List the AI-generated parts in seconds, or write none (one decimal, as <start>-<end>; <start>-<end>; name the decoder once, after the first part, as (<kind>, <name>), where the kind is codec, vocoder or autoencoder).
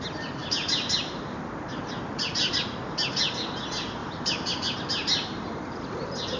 0.4-1.5 (vocoder, BigVGAN v2); 4.0-6.4